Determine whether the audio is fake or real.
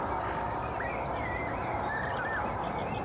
real